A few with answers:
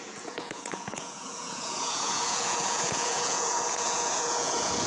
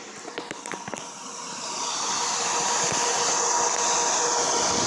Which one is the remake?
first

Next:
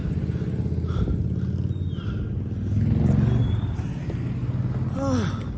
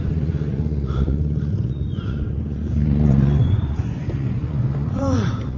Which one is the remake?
second